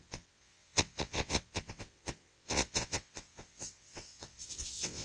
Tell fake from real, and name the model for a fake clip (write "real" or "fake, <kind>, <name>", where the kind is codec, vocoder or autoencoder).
fake, vocoder, WaveNeXt